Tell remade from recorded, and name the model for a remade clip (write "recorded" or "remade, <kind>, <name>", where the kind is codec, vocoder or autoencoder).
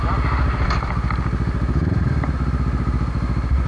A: recorded